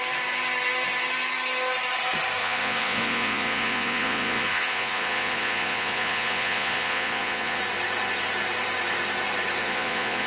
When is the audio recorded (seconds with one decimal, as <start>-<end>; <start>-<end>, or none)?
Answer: 0.0-2.4; 7.6-9.6